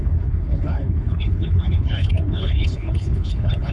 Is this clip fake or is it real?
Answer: fake